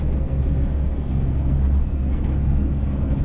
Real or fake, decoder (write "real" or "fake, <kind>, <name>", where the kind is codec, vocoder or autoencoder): fake, codec, SNAC